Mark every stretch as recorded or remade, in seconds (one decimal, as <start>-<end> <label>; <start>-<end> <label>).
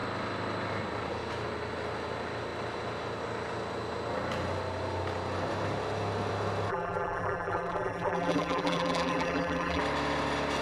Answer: 0.0-6.7 recorded; 6.7-9.8 remade; 9.8-10.6 recorded